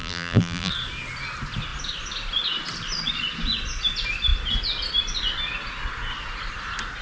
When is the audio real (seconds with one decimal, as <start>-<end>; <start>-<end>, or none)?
0.7-7.0